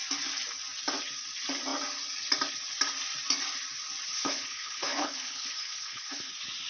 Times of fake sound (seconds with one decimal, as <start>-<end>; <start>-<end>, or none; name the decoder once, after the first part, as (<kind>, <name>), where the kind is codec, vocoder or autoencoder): 4.1-6.3 (codec, HILCodec)